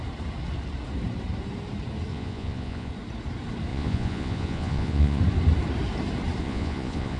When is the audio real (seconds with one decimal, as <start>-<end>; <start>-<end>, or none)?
0.0-2.1; 2.9-3.7; 5.2-6.4